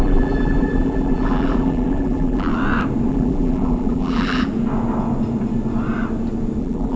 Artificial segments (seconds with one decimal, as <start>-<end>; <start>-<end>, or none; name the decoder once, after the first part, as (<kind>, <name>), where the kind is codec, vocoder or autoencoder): 0.0-2.5 (vocoder, BigVGAN v2); 3.1-4.5; 6.6-7.0